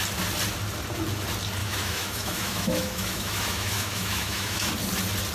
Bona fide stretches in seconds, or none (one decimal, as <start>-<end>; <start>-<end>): 0.0-1.6; 4.7-5.3